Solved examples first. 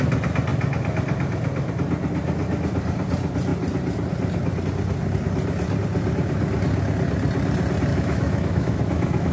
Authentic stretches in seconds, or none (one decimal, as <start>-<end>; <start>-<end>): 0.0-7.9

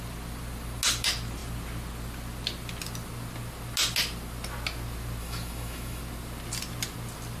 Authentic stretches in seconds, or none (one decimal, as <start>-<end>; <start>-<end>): 0.0-5.2; 6.0-7.4

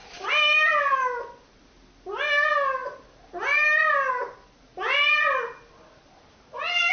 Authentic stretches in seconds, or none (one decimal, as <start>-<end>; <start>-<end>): 0.0-6.9

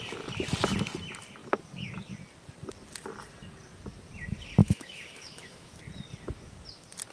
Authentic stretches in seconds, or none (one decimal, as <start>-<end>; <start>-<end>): 0.0-4.6; 5.8-7.1

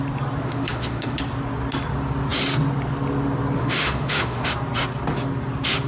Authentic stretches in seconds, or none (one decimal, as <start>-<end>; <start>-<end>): 0.0-0.4; 1.2-3.6; 4.5-5.9